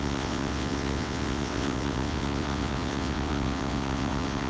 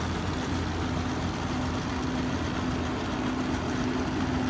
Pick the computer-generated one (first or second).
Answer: first